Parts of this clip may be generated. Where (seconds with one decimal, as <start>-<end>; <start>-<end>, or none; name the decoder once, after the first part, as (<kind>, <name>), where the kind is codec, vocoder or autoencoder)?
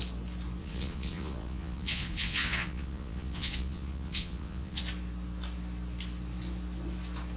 0.6-4.8 (vocoder, Vocos)